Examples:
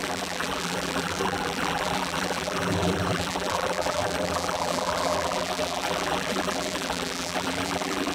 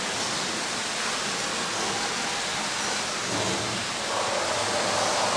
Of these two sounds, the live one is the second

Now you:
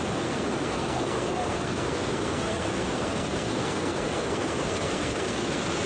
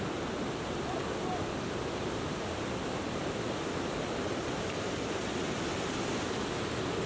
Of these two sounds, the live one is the second